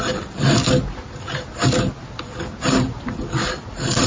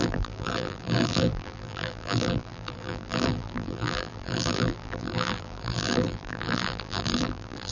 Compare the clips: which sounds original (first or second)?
first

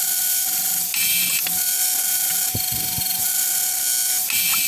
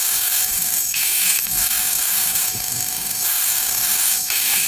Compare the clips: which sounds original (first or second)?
first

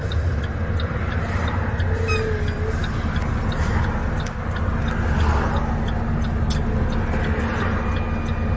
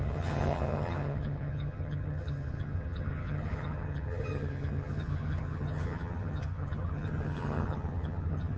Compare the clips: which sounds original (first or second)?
first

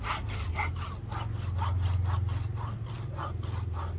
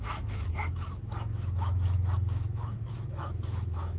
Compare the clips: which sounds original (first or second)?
first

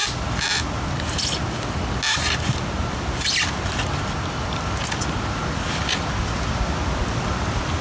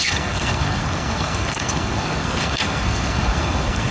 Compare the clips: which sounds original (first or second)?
first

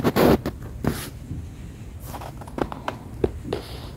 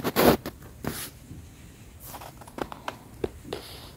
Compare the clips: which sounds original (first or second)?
first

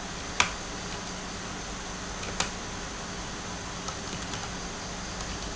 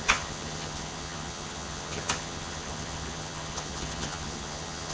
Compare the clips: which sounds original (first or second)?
first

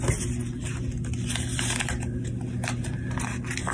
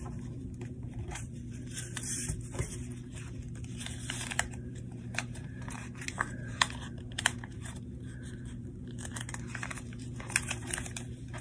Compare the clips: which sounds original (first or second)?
first